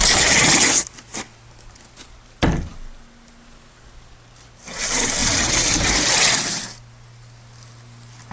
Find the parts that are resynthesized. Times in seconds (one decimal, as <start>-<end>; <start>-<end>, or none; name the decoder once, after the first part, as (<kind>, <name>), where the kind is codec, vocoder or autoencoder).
none